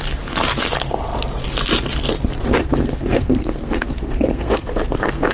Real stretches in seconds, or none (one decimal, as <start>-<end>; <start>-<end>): 0.0-2.6